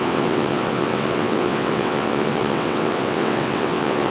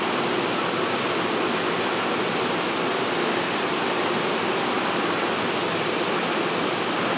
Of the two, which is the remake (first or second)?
first